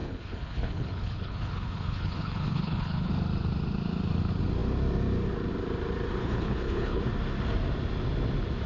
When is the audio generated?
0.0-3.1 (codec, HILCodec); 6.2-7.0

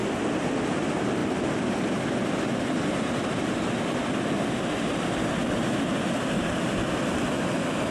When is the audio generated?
none

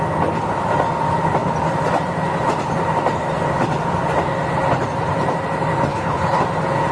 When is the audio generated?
5.9-6.4 (codec, HILCodec)

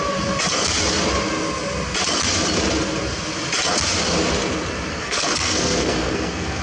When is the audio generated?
4.9-6.6 (codec, SNAC)

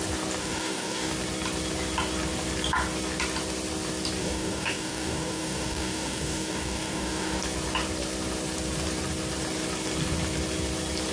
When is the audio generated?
0.4-1.1 (codec, DAC); 4.2-7.4

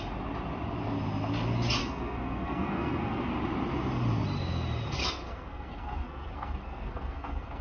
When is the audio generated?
1.8-3.3 (codec, SNAC); 5.0-7.6

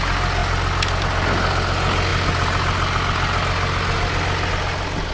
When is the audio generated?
none

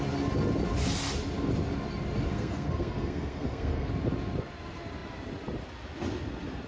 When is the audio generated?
2.3-3.9 (codec, SNAC)